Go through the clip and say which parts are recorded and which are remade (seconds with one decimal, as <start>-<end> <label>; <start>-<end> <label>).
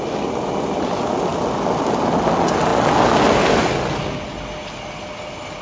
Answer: 0.0-5.6 recorded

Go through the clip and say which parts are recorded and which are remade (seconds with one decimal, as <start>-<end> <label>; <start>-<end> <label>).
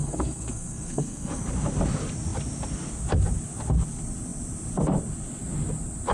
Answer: 0.0-1.4 remade; 1.4-6.1 recorded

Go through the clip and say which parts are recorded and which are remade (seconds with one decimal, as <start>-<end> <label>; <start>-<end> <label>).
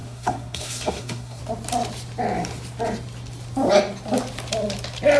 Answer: 0.0-1.4 remade; 1.4-5.2 recorded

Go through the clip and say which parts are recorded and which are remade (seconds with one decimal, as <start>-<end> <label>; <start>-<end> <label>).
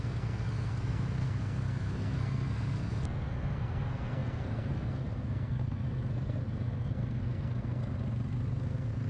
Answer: 0.0-7.8 remade; 7.8-8.5 recorded; 8.5-9.1 remade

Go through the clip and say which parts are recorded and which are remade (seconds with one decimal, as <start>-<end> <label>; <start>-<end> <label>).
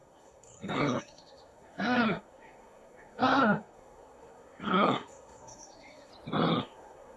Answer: 0.0-6.1 remade; 6.1-6.6 recorded; 6.6-7.2 remade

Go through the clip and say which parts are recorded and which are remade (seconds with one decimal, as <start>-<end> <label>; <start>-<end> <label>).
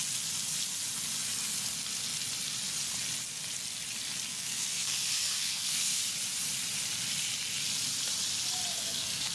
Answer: 0.0-4.3 recorded; 4.3-6.0 remade; 6.0-8.7 recorded; 8.7-9.3 remade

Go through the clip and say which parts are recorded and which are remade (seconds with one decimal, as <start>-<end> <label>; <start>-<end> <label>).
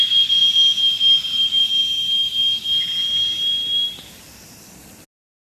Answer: 0.0-5.5 recorded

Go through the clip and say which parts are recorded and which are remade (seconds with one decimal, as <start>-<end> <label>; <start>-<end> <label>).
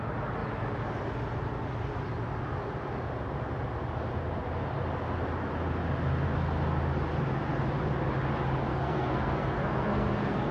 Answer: 0.0-8.7 recorded; 8.7-10.5 remade